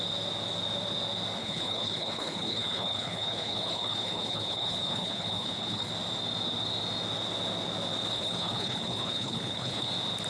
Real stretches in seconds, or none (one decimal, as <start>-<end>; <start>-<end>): 0.0-1.4; 5.9-8.1; 9.9-10.3